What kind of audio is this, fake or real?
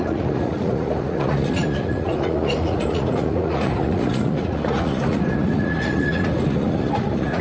fake